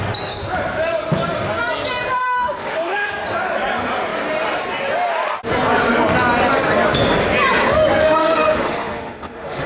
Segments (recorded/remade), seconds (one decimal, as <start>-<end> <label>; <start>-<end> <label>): 0.0-2.2 recorded; 2.2-3.1 remade; 3.1-8.0 recorded; 8.0-9.7 remade